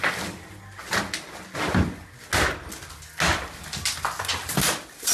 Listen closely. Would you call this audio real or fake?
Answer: real